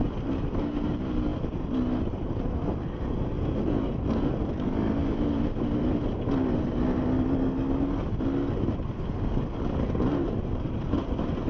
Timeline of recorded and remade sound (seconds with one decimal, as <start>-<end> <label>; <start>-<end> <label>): 0.0-11.5 recorded